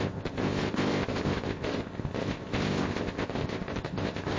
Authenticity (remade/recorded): remade